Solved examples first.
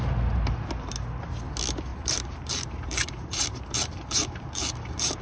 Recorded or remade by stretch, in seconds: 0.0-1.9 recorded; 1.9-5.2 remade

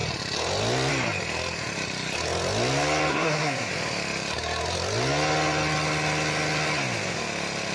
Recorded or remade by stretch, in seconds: 0.0-3.1 recorded; 3.1-3.7 remade; 3.7-7.7 recorded